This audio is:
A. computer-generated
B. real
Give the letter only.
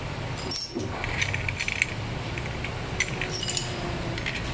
B